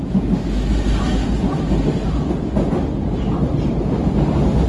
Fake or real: real